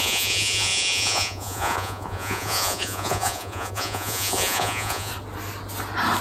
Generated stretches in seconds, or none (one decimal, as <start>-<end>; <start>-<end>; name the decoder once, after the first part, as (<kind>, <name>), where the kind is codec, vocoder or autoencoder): 0.0-5.1 (vocoder, Vocos)